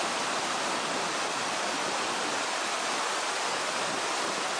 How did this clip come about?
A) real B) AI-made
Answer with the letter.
A